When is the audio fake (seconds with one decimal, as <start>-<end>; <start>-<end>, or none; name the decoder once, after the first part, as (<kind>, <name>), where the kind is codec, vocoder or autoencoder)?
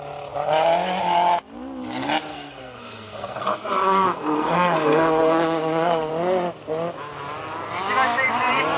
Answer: 2.3-6.1 (codec, SNAC)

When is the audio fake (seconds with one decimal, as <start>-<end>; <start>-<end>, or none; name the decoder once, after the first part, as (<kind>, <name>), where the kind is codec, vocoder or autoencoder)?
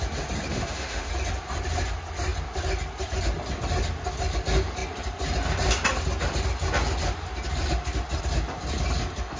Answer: 0.5-1.1 (autoencoder, DAC-VAE)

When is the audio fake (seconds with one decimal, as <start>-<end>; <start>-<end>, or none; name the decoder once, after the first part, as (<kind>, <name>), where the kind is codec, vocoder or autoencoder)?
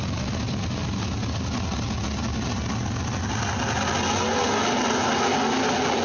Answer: none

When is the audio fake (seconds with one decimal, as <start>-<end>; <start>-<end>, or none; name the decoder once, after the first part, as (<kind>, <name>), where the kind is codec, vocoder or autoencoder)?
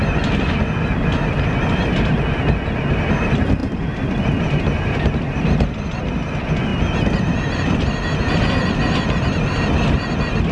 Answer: none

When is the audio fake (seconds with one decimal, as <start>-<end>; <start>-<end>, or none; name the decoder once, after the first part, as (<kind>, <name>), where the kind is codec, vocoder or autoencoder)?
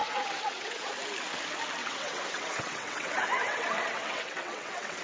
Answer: 0.0-0.9 (vocoder, WaveNeXt); 1.8-5.0